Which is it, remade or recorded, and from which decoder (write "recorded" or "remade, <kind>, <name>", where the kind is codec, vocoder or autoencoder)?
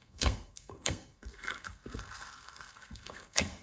remade, codec, SNAC